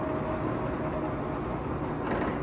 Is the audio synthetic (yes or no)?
no